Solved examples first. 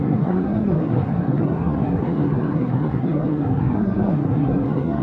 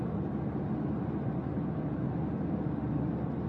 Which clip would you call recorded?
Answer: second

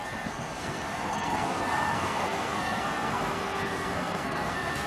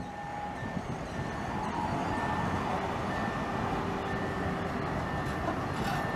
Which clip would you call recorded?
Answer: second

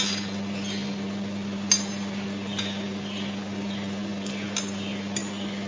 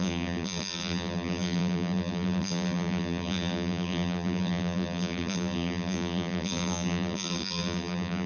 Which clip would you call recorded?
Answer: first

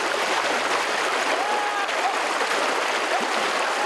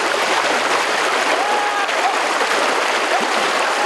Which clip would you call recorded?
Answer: first